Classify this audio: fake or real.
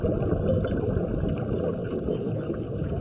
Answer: real